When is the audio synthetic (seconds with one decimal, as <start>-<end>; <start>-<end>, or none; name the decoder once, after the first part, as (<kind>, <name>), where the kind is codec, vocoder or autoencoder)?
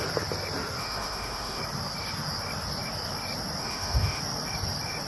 0.8-1.6 (autoencoder, DAC-VAE); 3.6-4.2